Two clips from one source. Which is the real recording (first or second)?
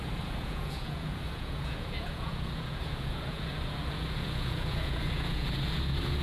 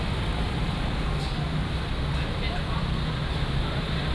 second